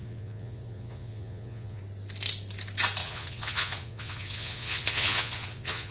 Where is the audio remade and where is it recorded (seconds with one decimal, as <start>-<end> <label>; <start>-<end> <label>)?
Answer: 0.0-1.8 remade; 1.8-3.0 recorded; 3.0-5.9 remade